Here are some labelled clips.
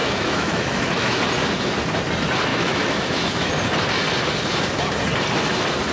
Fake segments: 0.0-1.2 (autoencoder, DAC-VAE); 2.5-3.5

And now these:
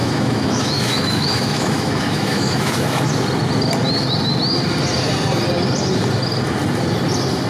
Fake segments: 0.0-3.0 (autoencoder, DAC-VAE)

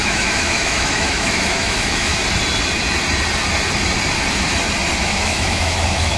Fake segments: 0.0-2.2 (autoencoder, DAC-VAE); 5.0-6.2

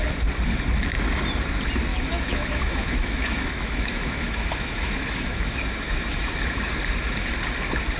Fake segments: 1.9-6.7 (autoencoder, DAC-VAE)